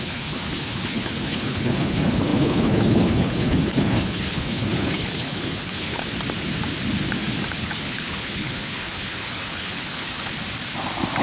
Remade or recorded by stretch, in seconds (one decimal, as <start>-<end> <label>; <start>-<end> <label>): 0.0-6.0 remade; 6.0-7.6 recorded; 7.6-10.3 remade; 10.3-11.2 recorded